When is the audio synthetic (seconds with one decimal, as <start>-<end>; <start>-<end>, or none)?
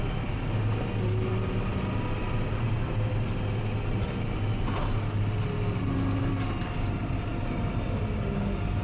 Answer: none